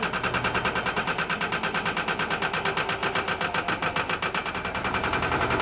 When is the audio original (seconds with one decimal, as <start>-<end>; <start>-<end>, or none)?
0.0-5.6